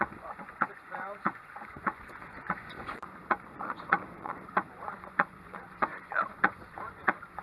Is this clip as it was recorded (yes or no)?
no